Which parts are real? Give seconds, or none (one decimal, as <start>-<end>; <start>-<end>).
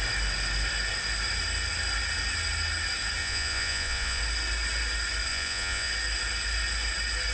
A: 0.0-3.2; 4.2-5.3; 5.9-7.3